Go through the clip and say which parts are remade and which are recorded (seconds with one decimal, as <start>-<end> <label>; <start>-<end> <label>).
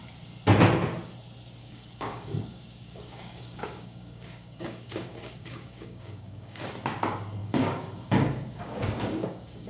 0.0-1.6 recorded; 1.6-6.7 remade; 6.7-7.4 recorded; 7.4-9.7 remade